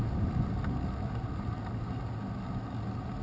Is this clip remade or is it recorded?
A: recorded